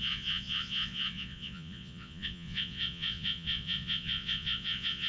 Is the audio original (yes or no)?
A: no